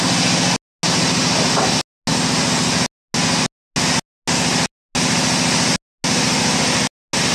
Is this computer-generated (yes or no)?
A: no